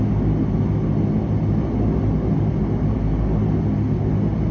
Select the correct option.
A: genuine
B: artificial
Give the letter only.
A